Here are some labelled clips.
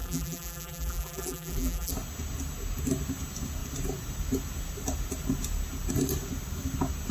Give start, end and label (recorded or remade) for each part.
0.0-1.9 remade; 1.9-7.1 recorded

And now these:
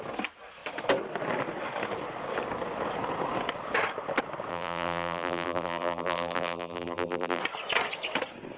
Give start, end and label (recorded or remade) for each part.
0.0-4.5 recorded; 4.5-7.4 remade; 7.4-8.6 recorded